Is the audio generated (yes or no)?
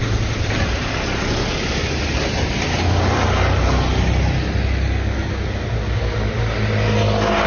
no